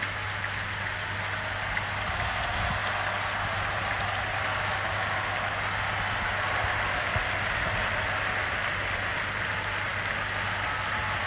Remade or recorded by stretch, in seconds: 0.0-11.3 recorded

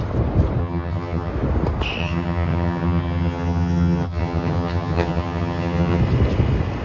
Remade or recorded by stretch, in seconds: 0.0-0.6 recorded; 0.6-1.3 remade; 1.3-2.0 recorded; 2.0-6.0 remade; 6.0-6.8 recorded

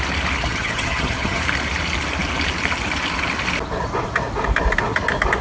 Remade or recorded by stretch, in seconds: 0.0-0.4 recorded; 0.4-1.4 remade; 1.4-5.4 recorded